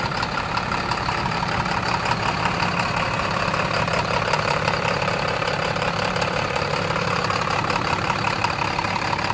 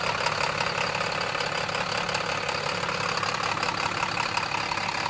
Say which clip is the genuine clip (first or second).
second